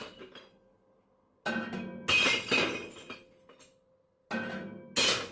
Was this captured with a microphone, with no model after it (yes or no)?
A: yes